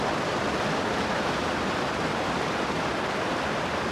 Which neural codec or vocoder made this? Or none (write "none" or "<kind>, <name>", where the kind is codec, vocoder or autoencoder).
vocoder, BigVGAN v2